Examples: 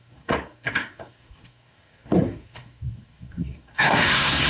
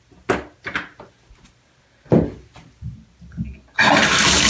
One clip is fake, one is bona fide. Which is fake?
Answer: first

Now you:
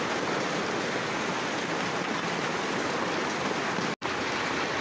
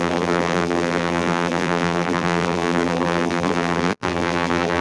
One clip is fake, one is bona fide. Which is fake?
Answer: second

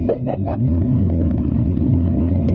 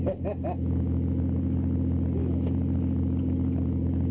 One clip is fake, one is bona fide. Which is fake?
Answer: first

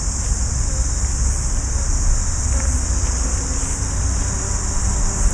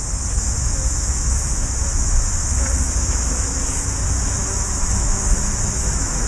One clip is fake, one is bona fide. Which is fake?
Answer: second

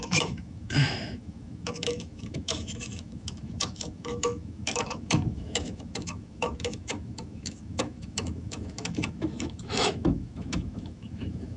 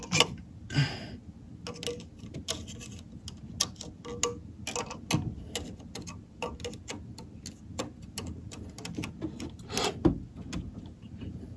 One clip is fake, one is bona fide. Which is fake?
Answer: first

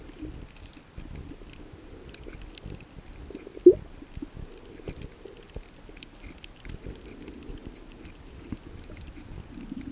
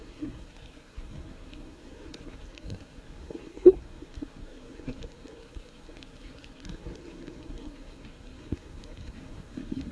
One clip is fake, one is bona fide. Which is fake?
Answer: second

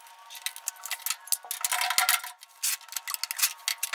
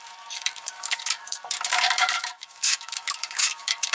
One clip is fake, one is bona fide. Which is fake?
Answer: second